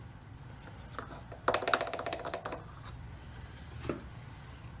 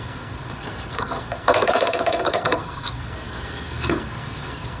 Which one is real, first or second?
first